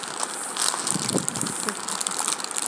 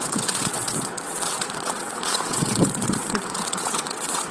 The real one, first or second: first